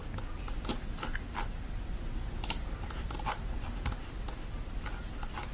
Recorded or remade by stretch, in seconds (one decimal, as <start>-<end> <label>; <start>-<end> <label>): 0.0-5.5 recorded